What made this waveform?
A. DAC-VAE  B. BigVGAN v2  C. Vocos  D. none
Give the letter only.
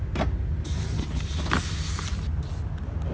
D